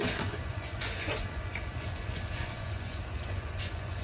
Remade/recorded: remade